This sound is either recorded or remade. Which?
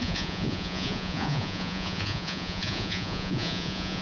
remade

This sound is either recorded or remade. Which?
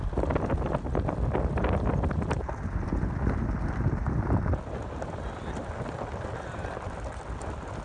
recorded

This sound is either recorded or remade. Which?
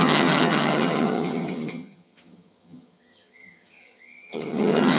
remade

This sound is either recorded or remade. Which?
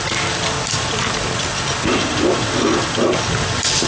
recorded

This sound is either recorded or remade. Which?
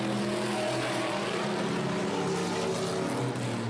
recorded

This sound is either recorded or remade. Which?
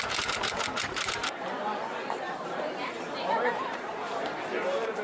remade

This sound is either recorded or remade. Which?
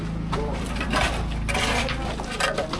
remade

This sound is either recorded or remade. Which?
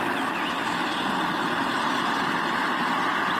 recorded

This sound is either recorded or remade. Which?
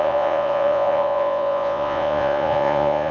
remade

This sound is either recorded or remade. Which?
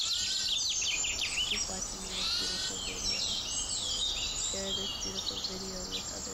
recorded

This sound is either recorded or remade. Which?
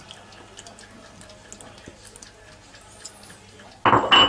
recorded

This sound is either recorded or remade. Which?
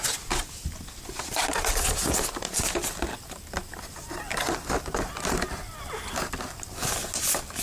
recorded